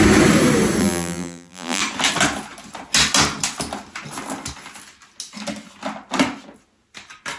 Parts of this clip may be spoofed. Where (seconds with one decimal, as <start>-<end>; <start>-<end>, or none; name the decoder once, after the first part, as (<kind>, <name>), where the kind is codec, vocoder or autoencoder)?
0.8-1.8 (vocoder, BigVGAN v2)